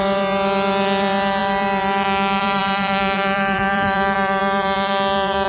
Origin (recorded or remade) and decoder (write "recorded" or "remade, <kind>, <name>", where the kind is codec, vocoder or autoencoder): remade, vocoder, BigVGAN v2